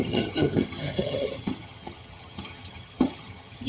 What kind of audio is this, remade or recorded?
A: remade